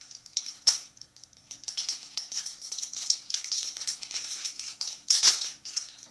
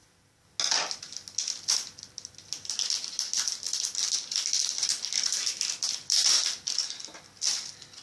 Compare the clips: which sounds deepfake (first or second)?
first